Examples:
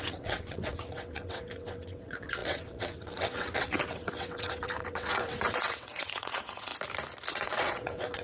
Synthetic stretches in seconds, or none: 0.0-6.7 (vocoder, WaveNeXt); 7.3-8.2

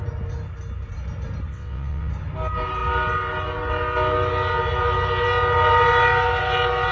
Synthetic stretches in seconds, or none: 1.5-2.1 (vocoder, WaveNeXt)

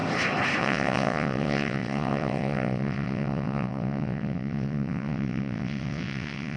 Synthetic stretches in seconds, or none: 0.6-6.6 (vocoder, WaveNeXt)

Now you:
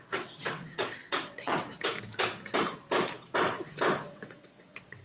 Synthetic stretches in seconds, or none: 0.0-1.7 (vocoder, WaveNeXt); 4.1-5.0